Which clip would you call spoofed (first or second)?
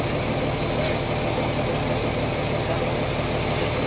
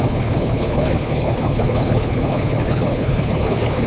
second